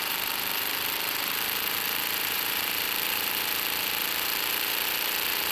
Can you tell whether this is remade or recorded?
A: remade